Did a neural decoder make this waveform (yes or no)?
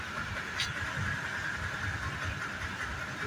no